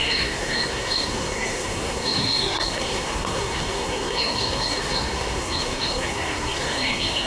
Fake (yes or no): yes